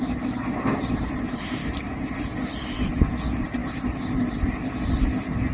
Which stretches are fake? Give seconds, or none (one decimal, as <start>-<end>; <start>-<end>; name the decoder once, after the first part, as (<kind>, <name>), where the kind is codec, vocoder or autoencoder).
none